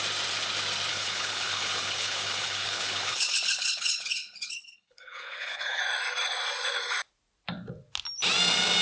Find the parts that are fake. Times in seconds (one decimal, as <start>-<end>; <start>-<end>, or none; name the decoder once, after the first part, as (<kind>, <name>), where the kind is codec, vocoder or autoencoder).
0.9-5.8 (codec, HILCodec)